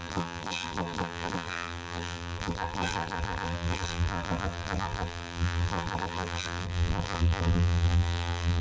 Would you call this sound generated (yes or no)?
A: yes